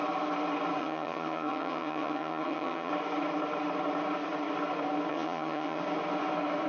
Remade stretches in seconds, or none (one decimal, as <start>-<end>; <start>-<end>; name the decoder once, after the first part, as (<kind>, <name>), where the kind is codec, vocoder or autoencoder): 0.8-2.9 (vocoder, HiFi-GAN); 5.1-5.8